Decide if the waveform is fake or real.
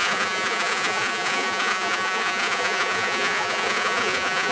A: fake